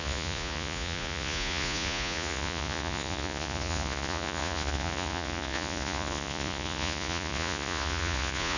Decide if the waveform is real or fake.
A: fake